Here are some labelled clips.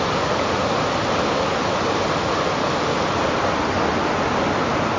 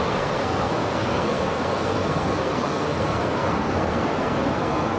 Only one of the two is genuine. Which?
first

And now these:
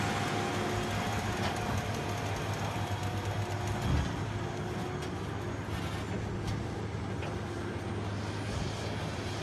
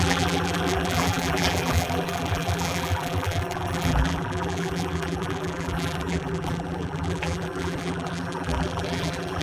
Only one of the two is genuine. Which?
first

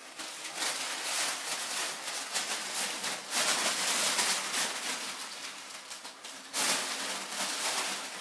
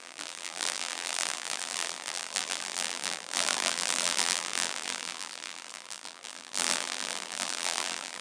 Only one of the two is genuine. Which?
first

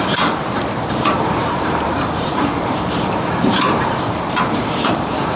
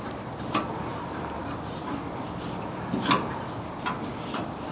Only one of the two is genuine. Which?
second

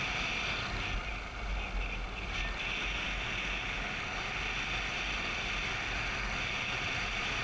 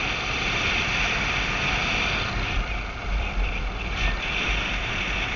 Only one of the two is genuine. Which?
first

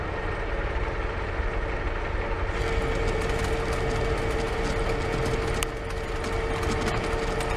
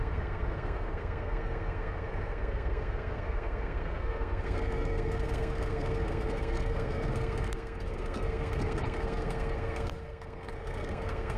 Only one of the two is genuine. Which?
first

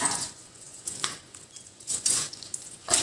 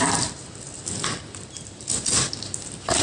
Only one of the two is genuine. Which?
second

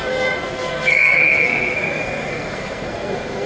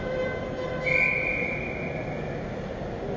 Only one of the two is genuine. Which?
second